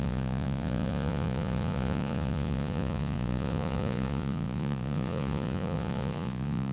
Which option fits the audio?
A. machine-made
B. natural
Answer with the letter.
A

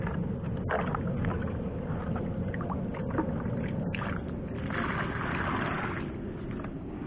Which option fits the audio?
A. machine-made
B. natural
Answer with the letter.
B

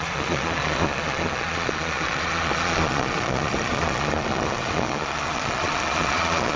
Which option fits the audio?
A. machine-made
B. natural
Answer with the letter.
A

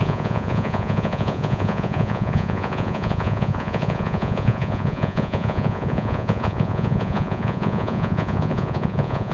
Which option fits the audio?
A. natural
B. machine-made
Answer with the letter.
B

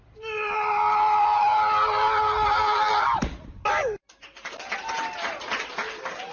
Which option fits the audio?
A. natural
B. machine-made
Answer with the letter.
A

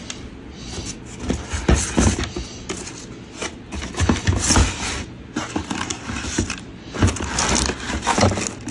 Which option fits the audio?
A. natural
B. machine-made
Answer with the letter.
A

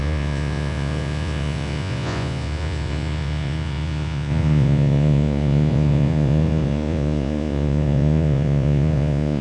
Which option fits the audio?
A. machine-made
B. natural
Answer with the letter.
A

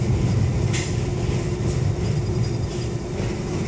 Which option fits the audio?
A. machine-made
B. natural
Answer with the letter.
B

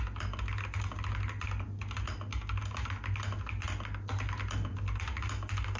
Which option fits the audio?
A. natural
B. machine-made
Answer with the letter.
A